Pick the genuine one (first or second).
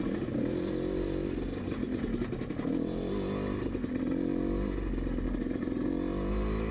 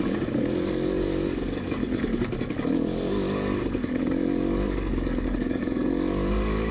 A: first